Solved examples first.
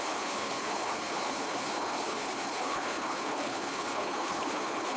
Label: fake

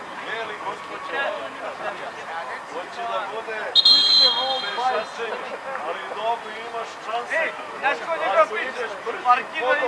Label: real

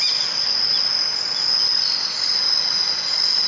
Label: real